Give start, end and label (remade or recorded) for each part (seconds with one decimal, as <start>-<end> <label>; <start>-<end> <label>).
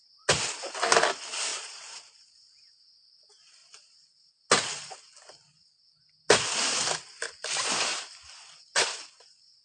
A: 0.0-1.5 recorded; 1.5-2.2 remade; 2.2-7.9 recorded; 7.9-8.6 remade; 8.6-9.6 recorded